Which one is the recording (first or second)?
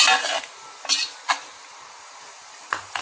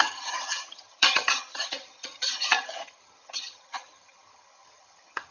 first